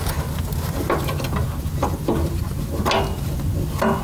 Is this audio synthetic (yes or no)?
no